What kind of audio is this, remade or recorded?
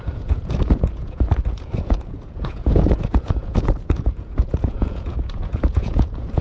remade